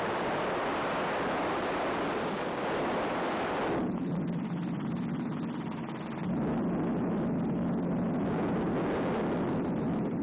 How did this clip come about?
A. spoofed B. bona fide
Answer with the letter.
B